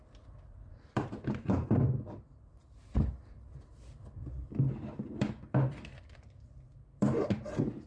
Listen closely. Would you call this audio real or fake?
fake